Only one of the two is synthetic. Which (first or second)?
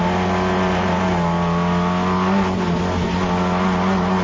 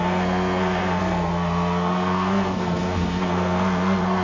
second